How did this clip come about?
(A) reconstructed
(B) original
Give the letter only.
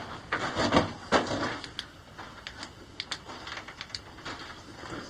B